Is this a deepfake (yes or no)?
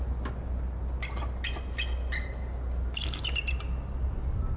no